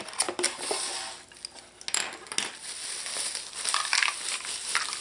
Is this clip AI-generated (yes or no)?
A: no